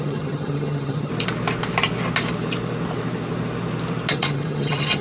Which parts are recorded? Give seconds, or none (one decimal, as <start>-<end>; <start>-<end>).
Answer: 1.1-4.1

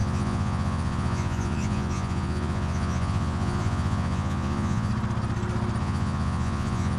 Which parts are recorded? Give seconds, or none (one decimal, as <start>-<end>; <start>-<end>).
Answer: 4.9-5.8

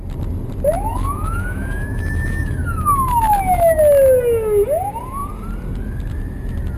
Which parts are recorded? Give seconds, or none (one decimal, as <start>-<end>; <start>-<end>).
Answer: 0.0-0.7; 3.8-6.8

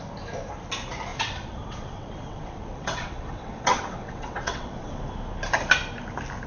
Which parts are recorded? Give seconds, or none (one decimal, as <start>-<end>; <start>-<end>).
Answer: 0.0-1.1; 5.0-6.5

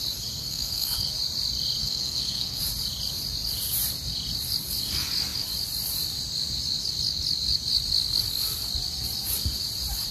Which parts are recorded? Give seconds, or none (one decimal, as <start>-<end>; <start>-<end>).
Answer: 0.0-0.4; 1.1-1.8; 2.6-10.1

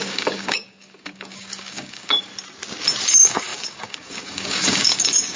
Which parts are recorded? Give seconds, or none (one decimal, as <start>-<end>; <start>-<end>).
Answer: 2.3-3.1